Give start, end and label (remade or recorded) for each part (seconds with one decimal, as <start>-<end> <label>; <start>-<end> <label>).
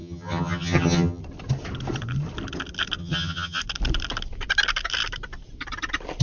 0.0-1.2 remade; 1.2-3.0 recorded; 3.0-3.6 remade; 3.6-6.2 recorded